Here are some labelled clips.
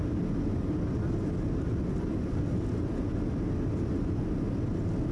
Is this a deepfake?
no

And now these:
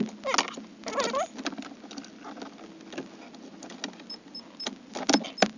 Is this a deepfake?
no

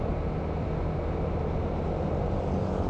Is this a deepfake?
no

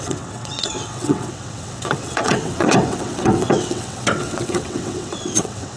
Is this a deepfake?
yes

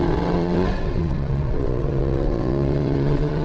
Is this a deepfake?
yes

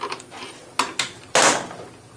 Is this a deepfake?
no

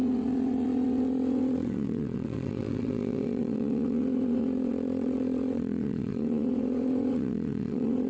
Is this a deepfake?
yes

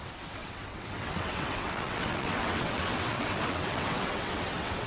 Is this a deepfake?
yes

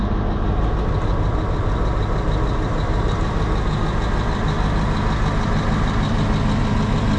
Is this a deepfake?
no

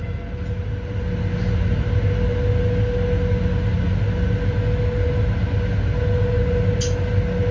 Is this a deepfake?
no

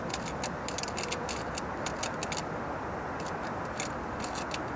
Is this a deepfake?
no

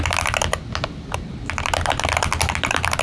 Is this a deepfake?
no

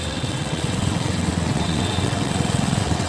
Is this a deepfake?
yes